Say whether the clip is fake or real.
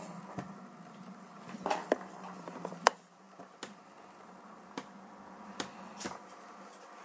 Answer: real